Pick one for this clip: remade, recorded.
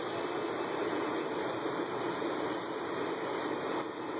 recorded